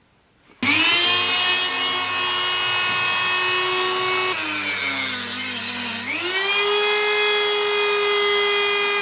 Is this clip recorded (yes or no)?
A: yes